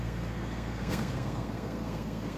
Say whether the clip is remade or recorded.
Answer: remade